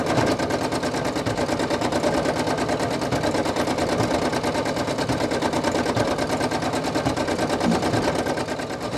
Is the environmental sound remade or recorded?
recorded